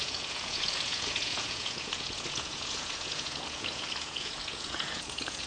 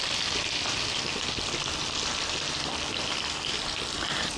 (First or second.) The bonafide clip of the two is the second